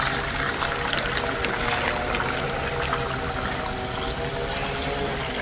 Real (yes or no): yes